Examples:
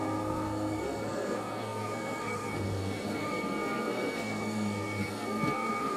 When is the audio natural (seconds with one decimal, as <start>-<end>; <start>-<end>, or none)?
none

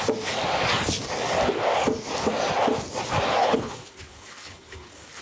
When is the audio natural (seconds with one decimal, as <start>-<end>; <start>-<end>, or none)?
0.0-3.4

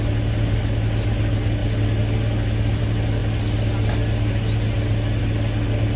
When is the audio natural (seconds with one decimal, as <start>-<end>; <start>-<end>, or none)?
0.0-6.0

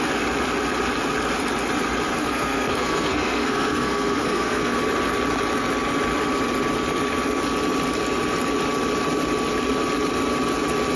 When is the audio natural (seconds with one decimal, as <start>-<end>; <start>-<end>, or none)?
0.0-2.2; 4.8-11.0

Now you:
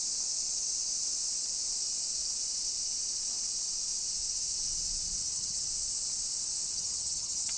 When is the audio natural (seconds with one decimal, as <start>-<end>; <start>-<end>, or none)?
0.0-5.2; 5.7-6.7

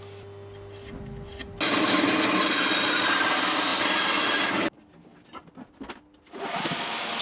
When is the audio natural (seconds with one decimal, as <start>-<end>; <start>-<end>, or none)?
0.0-7.2

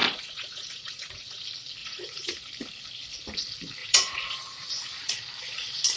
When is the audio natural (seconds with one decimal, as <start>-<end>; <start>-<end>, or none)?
1.4-1.8; 2.5-3.8; 5.1-6.0